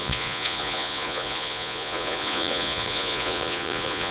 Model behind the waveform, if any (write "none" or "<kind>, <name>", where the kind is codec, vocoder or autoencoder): vocoder, Vocos